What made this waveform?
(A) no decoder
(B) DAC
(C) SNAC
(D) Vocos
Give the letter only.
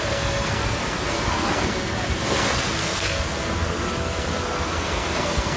C